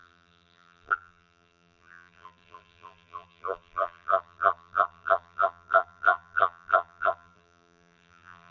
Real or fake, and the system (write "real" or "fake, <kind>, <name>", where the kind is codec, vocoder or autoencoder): fake, vocoder, BigVGAN v2